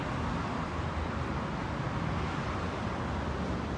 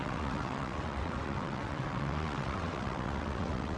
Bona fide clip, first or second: first